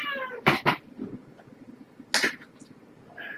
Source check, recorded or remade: remade